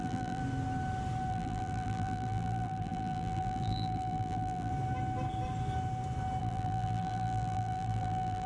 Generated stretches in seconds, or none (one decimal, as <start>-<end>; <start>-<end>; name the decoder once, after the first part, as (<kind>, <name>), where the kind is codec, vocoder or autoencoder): 0.0-0.4 (vocoder, BigVGAN v2); 1.3-4.7; 6.4-8.5